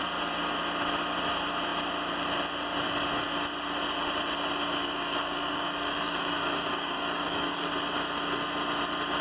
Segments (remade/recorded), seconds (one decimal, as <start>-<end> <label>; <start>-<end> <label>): 0.0-4.8 recorded; 4.8-7.7 remade; 7.7-9.2 recorded